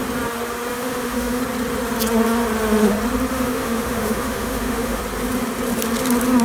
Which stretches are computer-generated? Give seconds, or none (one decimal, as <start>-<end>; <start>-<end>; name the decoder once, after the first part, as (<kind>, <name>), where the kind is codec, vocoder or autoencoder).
0.7-1.4 (autoencoder, DAC-VAE); 3.3-5.0